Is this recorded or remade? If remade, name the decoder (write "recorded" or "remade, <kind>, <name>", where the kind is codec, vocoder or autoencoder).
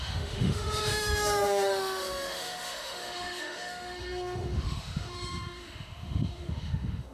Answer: remade, autoencoder, DAC-VAE